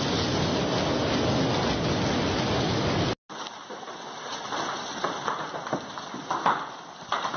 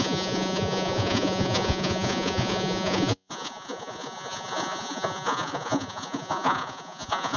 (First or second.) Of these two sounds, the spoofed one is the second